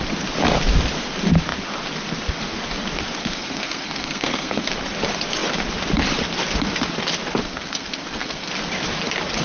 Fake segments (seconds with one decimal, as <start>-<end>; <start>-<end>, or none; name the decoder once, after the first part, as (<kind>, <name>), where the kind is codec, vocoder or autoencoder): 3.2-4.7 (codec, SNAC); 7.4-8.5

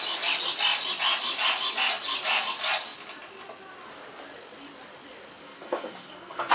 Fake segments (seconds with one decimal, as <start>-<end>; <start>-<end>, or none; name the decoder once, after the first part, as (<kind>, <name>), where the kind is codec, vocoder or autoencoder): 5.4-6.5 (codec, SNAC)

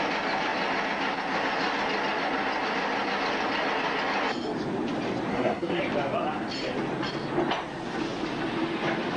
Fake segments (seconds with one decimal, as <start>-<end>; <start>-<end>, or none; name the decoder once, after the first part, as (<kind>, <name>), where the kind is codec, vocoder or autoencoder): 5.3-5.8 (codec, SNAC)